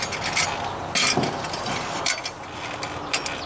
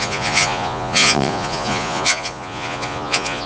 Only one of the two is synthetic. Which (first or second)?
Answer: second